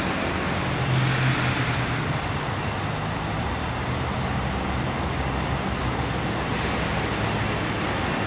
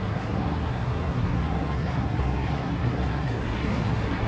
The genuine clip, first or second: first